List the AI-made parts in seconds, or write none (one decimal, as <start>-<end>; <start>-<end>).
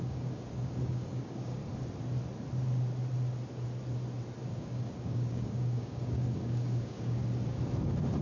0.0-1.6; 4.4-7.2